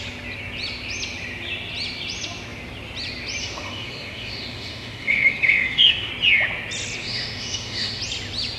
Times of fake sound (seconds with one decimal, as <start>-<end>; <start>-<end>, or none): 3.4-6.1; 7.0-8.0